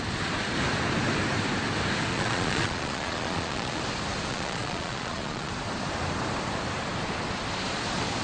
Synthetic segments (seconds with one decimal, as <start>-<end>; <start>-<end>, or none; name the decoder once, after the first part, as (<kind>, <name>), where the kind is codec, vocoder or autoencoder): 2.1-3.8 (vocoder, Vocos); 4.3-5.5